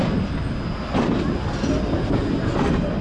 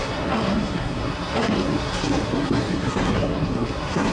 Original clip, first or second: first